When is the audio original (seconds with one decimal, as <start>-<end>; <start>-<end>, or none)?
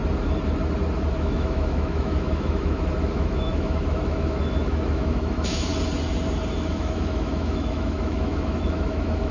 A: 0.0-1.1; 5.7-6.7